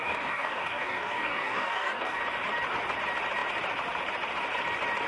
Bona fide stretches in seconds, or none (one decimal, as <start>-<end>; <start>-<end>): 2.2-5.1